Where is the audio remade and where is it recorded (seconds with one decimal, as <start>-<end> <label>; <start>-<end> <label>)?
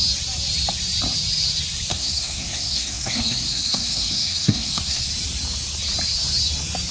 0.0-1.9 recorded; 1.9-5.1 remade; 5.1-6.9 recorded